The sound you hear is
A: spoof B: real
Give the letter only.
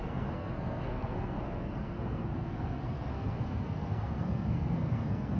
A